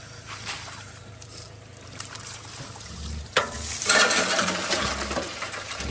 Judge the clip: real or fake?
fake